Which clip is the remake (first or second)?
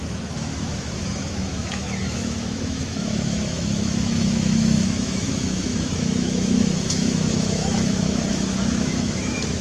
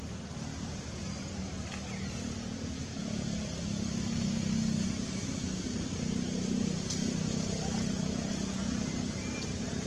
first